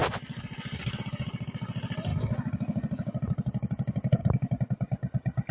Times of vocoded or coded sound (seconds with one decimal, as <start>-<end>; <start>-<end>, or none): none

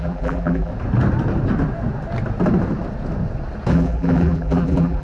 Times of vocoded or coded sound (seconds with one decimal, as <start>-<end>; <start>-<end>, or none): 0.0-0.7; 3.7-5.0

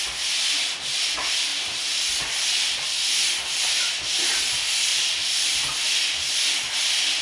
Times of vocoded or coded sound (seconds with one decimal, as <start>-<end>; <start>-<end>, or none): 1.5-2.1; 4.9-5.9